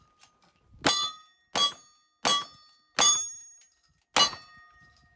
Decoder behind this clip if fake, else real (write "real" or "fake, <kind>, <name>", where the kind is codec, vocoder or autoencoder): real